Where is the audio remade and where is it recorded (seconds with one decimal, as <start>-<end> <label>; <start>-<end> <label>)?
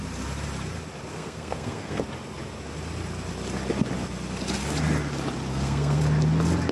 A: 0.0-1.1 recorded; 1.1-2.0 remade; 2.0-5.5 recorded; 5.5-6.0 remade; 6.0-6.7 recorded